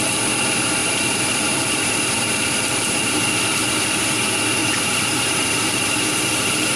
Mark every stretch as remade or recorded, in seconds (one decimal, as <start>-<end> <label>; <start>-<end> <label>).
0.0-0.8 recorded; 0.8-3.3 remade; 3.3-4.6 recorded; 4.6-6.8 remade